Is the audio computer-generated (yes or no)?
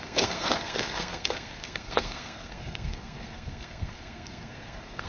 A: yes